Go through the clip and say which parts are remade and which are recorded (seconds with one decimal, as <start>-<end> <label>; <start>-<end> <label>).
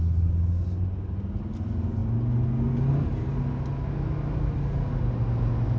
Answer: 0.0-5.8 recorded